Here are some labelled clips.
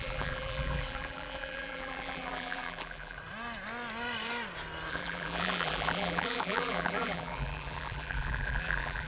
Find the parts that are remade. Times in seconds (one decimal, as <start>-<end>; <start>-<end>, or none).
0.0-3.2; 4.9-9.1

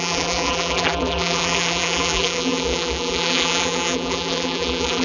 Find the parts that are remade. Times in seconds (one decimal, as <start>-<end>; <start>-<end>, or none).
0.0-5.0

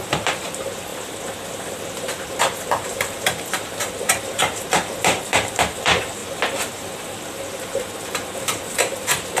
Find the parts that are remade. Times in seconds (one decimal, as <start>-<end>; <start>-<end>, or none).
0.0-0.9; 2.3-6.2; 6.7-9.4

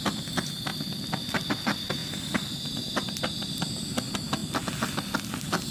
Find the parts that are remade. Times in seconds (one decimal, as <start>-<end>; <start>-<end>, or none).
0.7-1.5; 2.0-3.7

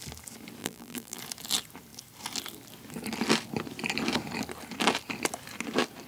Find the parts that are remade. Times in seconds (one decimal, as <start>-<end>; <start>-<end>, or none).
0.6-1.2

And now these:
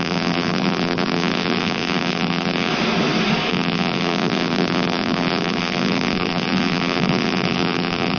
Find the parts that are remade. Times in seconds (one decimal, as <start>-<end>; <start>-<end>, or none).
0.0-2.7; 3.5-8.2